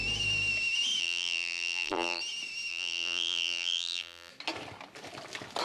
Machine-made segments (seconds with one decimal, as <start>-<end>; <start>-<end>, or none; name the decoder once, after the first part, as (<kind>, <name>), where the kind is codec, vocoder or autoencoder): 1.0-2.2 (vocoder, BigVGAN v2); 2.7-4.3